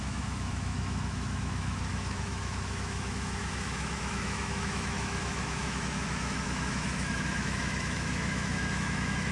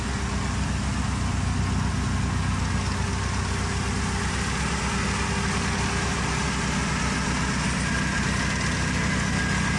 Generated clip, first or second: first